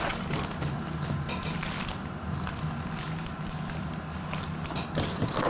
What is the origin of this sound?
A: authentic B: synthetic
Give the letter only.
A